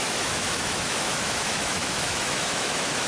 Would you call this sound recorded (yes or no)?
no